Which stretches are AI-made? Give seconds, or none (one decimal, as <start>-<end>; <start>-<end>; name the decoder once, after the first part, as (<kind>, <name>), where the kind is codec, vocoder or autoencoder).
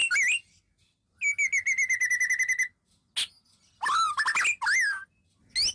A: none